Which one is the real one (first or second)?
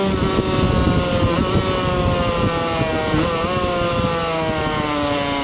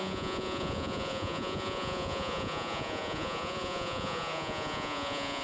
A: first